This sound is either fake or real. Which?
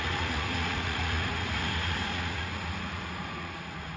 fake